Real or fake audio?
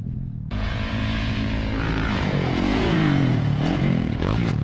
fake